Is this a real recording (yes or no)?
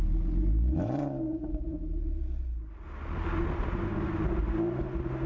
yes